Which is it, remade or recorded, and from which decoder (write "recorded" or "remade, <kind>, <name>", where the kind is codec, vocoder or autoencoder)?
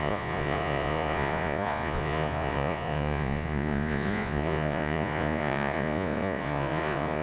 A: remade, vocoder, Vocos